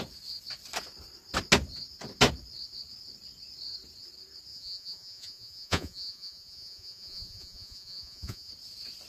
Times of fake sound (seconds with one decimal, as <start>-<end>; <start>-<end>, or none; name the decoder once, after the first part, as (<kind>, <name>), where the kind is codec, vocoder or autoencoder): 4.5-8.5 (vocoder, Vocos)